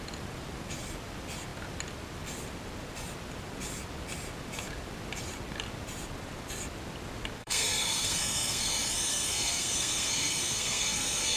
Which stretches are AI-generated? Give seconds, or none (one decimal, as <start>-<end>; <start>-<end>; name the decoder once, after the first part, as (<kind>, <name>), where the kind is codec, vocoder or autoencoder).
7.4-8.7 (codec, SNAC); 9.1-11.4